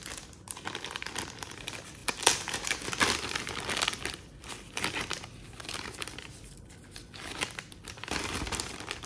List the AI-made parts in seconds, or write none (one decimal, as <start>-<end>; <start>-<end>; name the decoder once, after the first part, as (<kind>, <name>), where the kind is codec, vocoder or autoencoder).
none